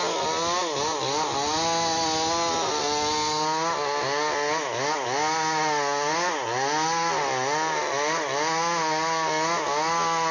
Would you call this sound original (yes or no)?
yes